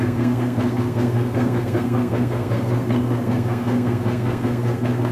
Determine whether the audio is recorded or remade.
remade